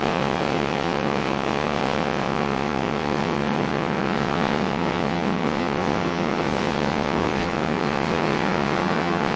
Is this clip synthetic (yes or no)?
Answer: yes